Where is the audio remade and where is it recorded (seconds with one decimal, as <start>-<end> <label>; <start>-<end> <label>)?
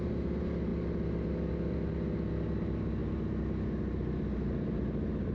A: 0.0-5.3 recorded